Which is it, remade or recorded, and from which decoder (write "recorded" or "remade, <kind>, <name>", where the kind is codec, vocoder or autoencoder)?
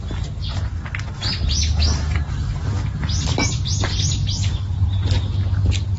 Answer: recorded